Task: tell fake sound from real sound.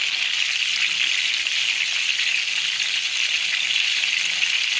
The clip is real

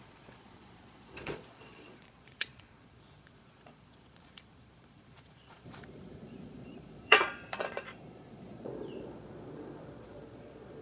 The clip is fake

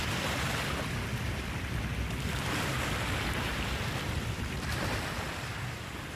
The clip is fake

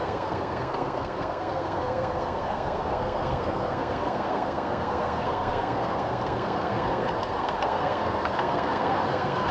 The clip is fake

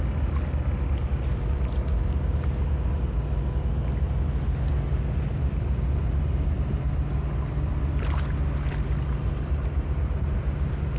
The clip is real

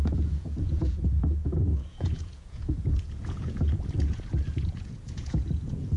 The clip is fake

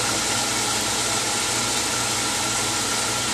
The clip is real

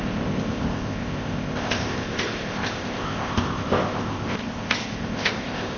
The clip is fake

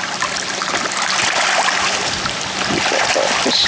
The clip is real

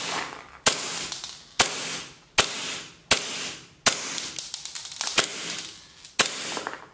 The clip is real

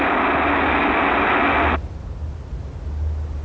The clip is real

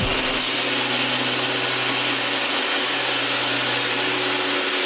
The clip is real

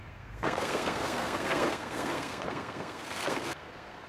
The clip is fake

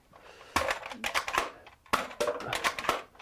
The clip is real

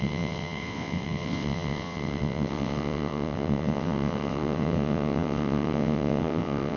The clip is fake